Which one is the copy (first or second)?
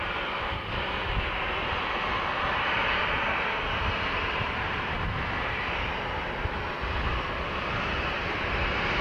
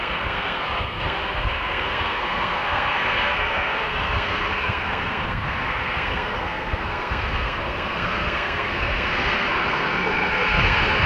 second